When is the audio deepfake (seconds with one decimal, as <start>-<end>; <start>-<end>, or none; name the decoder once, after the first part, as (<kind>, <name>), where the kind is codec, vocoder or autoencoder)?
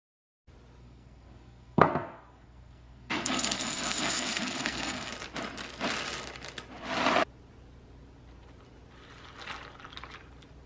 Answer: 0.8-5.1 (codec, SNAC)